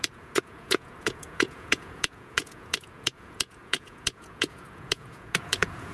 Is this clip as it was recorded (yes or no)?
no